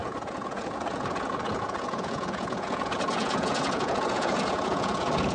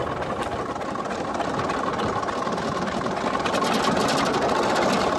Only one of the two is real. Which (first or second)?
second